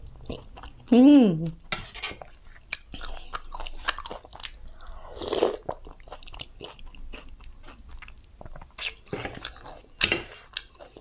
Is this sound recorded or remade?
recorded